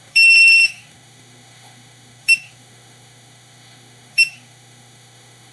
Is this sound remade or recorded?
remade